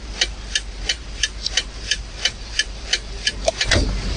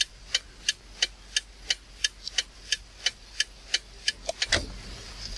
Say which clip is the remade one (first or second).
first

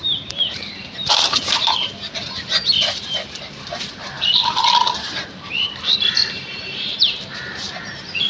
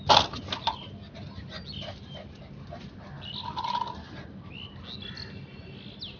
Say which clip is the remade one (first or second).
first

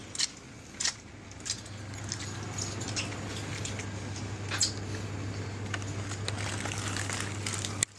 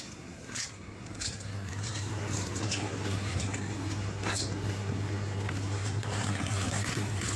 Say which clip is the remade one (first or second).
second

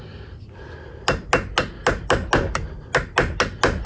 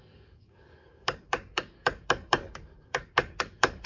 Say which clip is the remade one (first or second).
second